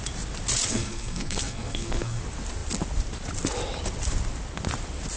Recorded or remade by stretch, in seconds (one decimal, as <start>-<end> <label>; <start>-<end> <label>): 0.0-0.7 recorded; 0.7-2.2 remade; 2.2-5.2 recorded